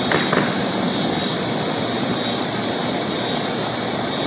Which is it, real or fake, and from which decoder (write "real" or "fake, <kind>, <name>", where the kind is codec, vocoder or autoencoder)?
real